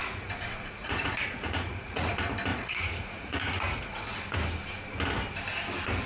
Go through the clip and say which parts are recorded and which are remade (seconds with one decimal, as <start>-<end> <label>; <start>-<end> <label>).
0.0-2.1 remade; 2.1-2.5 recorded; 2.5-4.2 remade; 4.2-6.1 recorded